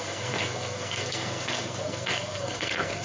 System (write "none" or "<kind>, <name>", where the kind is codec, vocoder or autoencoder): codec, SNAC